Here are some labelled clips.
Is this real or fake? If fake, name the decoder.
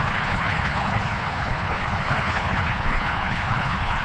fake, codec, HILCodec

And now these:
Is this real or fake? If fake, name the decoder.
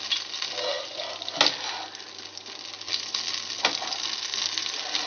real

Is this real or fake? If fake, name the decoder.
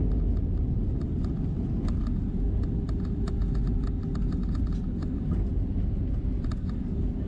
real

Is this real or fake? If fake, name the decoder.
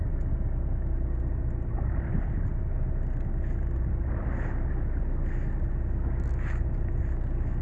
real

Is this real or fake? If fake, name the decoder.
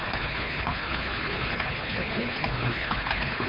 fake, codec, HILCodec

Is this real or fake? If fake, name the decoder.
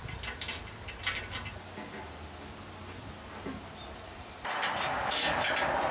real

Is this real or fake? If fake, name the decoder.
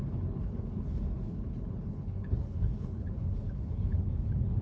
fake, codec, HILCodec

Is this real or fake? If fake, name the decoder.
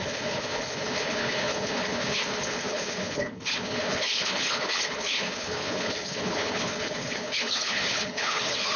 fake, codec, HILCodec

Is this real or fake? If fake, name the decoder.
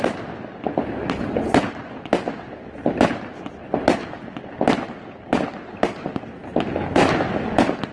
real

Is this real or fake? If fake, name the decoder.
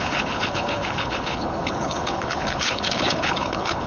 fake, codec, HILCodec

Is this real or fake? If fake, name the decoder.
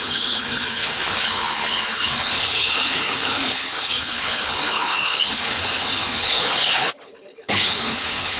fake, codec, HILCodec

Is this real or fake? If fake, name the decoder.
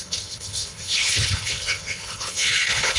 fake, codec, HILCodec